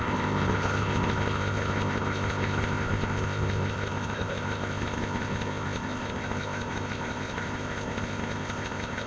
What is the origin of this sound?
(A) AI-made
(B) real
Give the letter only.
A